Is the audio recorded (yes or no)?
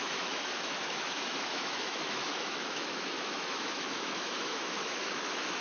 no